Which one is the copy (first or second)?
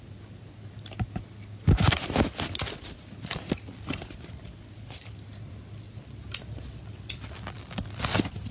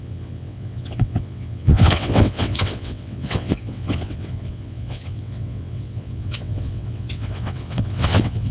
second